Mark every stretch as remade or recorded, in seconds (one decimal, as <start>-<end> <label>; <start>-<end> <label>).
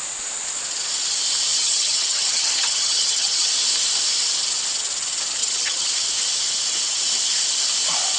0.0-1.5 recorded; 1.5-3.5 remade; 3.5-5.4 recorded; 5.4-5.9 remade; 5.9-8.2 recorded